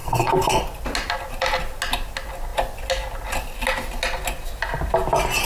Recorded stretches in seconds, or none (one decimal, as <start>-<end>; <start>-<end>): 0.6-5.4